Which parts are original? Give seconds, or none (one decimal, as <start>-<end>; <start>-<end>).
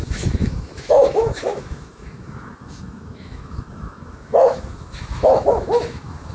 none